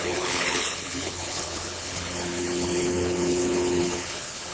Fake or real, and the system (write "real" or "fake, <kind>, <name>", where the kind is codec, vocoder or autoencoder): fake, codec, HILCodec